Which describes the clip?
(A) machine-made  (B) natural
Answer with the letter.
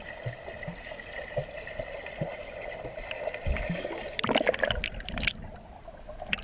B